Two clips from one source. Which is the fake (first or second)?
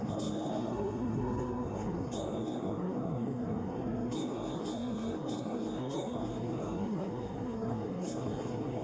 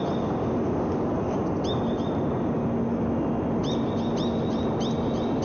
first